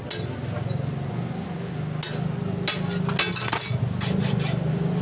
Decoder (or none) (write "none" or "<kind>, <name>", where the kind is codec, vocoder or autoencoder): none